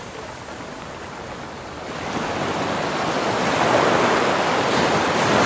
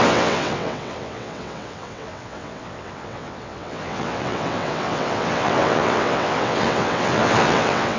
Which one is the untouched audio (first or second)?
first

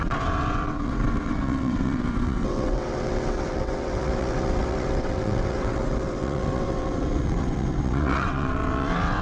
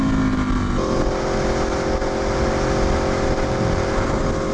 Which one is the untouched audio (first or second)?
second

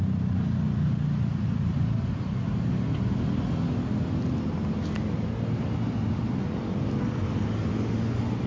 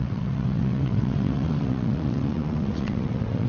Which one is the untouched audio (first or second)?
first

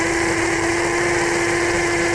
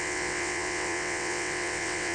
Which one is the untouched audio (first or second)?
first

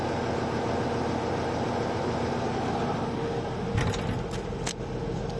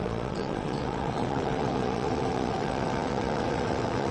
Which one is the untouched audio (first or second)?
first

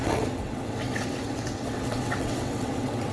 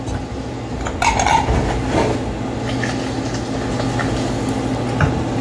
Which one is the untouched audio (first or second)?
second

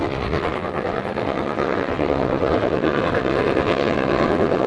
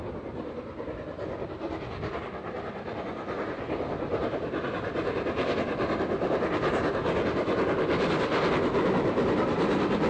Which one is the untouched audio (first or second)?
second